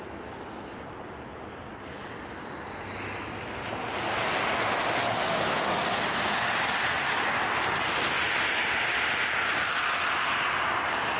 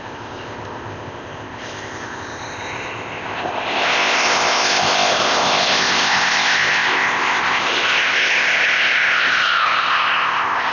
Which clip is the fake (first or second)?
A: second